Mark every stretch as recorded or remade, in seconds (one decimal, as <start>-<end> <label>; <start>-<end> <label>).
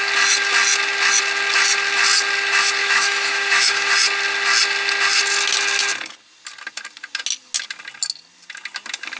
0.0-2.8 recorded; 2.8-3.9 remade; 3.9-9.2 recorded